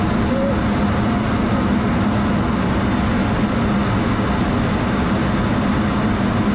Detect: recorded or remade recorded